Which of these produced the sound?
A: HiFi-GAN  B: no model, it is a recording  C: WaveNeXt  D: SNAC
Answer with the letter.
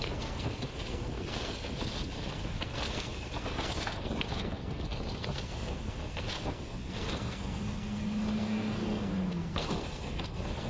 D